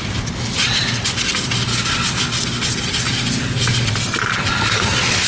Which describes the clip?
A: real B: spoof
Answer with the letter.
A